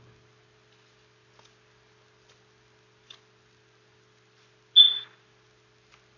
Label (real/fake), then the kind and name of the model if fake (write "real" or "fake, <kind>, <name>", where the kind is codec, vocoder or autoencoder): real